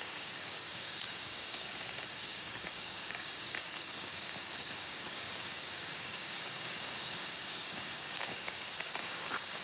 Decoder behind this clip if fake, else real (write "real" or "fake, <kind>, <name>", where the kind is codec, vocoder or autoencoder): fake, codec, DAC